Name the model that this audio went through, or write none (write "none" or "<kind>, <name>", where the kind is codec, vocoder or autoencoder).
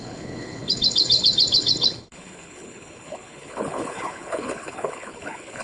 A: codec, HILCodec